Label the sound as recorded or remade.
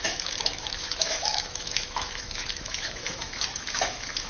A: remade